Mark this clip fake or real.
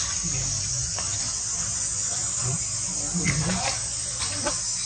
real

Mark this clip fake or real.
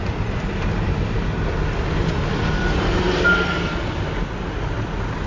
real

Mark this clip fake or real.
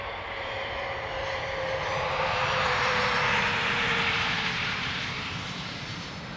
fake